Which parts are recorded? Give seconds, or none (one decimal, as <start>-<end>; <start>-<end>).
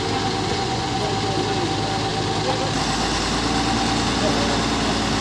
0.0-0.5; 1.1-5.2